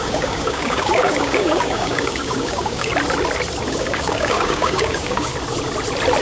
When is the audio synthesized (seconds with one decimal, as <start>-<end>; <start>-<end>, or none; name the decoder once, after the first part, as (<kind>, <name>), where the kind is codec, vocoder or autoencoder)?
0.0-2.9 (codec, DAC); 3.7-5.3